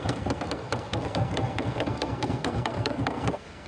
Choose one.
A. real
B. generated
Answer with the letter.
B